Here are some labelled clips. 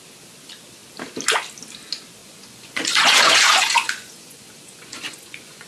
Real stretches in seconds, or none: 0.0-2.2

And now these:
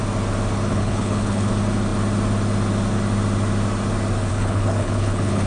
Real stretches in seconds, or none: 0.0-0.7; 1.5-4.3

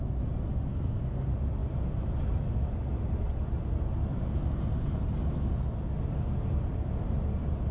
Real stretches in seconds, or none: 0.0-0.7; 1.2-7.7

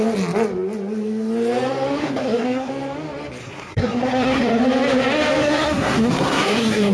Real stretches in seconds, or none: 0.0-2.0; 2.7-3.4; 4.6-5.4

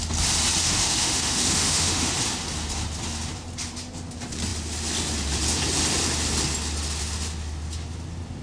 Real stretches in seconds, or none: 0.0-0.6; 2.1-8.4